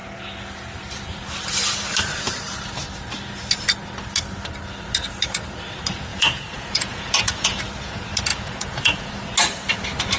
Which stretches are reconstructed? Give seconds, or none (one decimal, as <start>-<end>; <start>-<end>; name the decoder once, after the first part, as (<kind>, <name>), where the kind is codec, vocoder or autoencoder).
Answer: 6.1-7.6 (vocoder, Vocos); 8.3-9.1